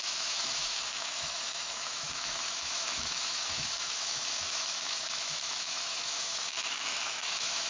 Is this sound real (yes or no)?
no